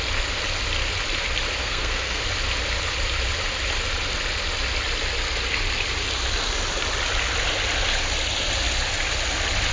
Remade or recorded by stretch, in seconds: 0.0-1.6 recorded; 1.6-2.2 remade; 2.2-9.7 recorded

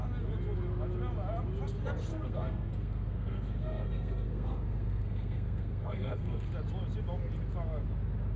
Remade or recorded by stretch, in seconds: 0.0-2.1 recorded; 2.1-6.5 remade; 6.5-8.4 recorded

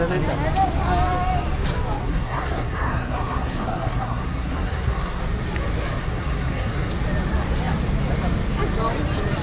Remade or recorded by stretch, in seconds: 0.0-2.0 recorded; 2.0-5.2 remade; 5.2-6.0 recorded; 6.0-6.9 remade; 6.9-9.4 recorded

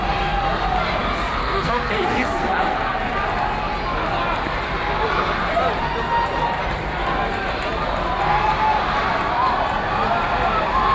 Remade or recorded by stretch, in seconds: 0.0-1.4 recorded; 1.4-3.1 remade; 3.1-10.9 recorded